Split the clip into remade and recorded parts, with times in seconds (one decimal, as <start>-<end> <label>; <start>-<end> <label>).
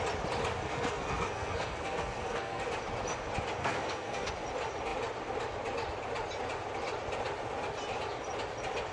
0.0-0.7 recorded; 0.7-2.6 remade; 2.6-3.6 recorded; 3.6-4.3 remade; 4.3-8.9 recorded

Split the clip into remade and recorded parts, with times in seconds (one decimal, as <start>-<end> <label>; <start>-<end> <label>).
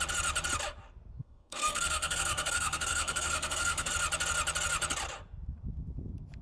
0.0-1.2 recorded; 1.2-3.9 remade; 3.9-6.4 recorded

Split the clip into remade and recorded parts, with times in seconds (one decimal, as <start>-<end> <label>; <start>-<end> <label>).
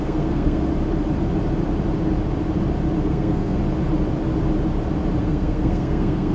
0.0-0.7 remade; 0.7-3.0 recorded; 3.0-3.6 remade; 3.6-5.2 recorded; 5.2-6.3 remade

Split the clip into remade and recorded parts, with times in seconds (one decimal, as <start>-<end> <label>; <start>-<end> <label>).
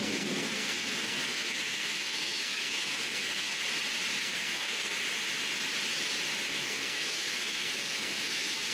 0.0-3.6 remade; 3.6-4.2 recorded; 4.2-4.9 remade; 4.9-6.5 recorded; 6.5-8.7 remade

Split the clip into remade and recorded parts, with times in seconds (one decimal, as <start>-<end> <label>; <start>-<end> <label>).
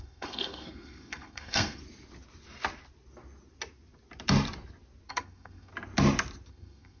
0.0-1.8 remade; 1.8-5.1 recorded; 5.1-5.7 remade; 5.7-6.5 recorded; 6.5-7.0 remade